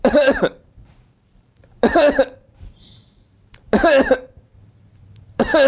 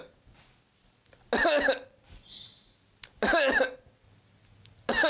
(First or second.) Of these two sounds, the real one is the second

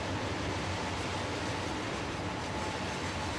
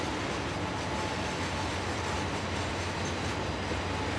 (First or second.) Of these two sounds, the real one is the second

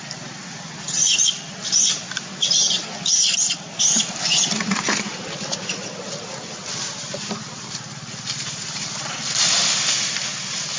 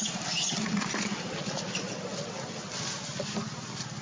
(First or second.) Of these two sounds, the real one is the second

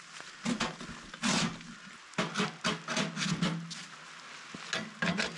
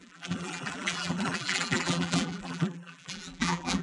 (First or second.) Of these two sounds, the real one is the first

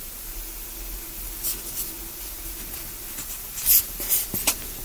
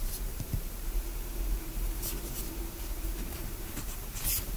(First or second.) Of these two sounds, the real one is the first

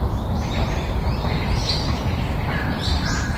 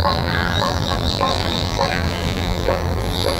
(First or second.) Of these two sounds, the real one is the first